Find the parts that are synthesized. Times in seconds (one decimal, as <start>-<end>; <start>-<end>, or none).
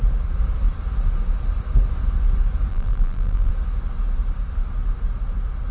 2.7-3.5